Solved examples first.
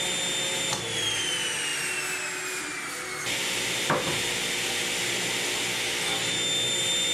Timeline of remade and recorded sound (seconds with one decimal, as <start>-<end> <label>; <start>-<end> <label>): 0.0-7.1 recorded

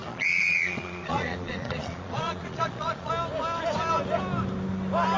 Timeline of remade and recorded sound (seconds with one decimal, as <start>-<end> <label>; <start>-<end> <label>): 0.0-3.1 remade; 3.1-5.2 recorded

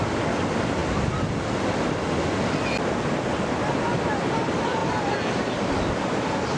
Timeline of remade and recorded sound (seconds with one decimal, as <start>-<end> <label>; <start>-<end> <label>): 0.0-6.6 recorded

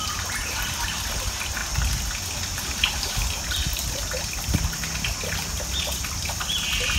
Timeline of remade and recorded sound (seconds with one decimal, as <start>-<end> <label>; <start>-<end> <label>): 0.0-7.0 recorded

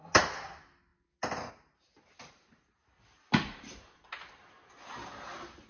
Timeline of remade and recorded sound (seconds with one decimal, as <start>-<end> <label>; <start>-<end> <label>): 0.0-5.7 recorded

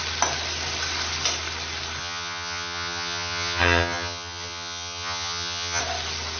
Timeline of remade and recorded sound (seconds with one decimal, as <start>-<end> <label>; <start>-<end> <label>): 0.0-2.0 recorded; 2.0-5.8 remade; 5.8-6.4 recorded

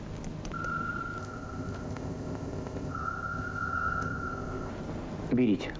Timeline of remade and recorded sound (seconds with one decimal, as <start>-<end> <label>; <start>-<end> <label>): 0.0-1.2 recorded; 1.2-4.7 remade; 4.7-5.8 recorded

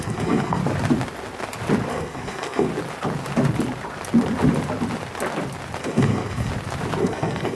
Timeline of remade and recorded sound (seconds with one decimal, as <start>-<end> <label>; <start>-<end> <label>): 0.0-0.6 remade; 0.6-1.9 recorded; 1.9-2.7 remade; 2.7-5.8 recorded; 5.8-6.5 remade; 6.5-7.0 recorded; 7.0-7.5 remade